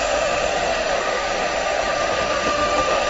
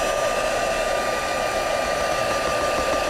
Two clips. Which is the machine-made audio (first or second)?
first